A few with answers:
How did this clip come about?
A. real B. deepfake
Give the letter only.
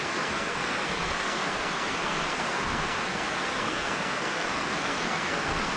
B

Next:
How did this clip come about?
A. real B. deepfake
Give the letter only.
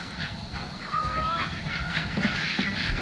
B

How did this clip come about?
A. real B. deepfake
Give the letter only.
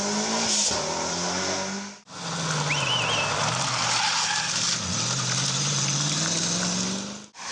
A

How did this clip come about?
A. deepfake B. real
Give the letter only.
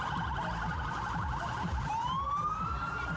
A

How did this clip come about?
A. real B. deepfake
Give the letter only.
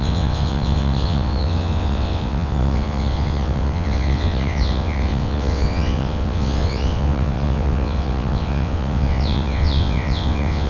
B